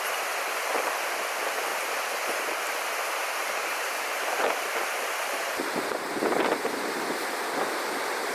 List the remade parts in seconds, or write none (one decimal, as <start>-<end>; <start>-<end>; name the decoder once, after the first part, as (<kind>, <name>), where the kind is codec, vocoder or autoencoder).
3.6-5.4 (vocoder, BigVGAN v2)